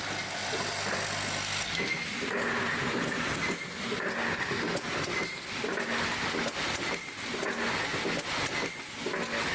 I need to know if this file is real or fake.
real